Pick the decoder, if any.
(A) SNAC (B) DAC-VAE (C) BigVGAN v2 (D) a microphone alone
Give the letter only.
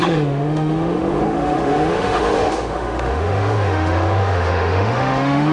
B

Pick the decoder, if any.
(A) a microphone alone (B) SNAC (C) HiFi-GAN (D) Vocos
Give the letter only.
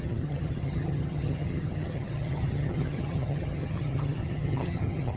C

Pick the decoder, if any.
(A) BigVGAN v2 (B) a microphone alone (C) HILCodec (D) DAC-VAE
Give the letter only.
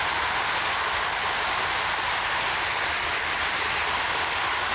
B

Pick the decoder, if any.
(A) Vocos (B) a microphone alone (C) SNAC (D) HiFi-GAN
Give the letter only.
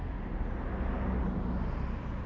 B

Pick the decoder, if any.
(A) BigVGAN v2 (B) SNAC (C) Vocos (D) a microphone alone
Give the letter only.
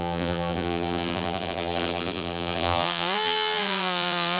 A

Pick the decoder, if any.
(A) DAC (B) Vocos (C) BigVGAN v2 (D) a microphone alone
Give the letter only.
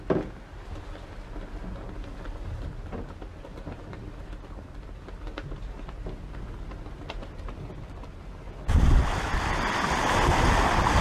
D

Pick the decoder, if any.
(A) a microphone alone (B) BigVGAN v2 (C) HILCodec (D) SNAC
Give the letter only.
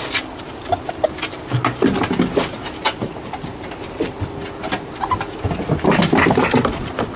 A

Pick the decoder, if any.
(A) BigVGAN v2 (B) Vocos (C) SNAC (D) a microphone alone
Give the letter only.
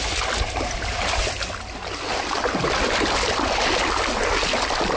D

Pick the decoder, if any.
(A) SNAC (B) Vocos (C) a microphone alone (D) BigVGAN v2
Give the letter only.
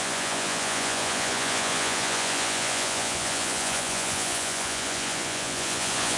B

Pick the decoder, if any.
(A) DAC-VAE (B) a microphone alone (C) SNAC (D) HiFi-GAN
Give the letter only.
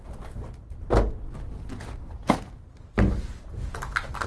B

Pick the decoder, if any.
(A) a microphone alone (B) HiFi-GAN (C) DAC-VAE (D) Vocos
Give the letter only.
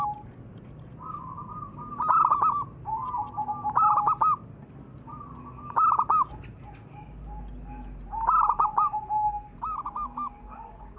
A